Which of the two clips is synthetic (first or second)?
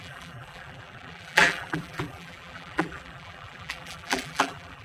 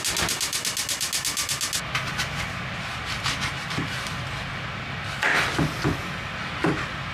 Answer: first